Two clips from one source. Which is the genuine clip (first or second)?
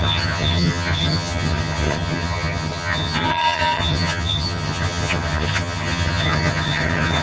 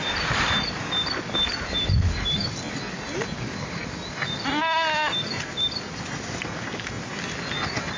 second